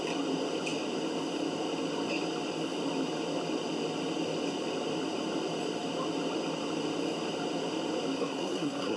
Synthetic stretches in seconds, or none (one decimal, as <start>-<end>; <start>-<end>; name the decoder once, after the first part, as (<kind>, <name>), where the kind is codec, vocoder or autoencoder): 8.2-9.0 (codec, SNAC)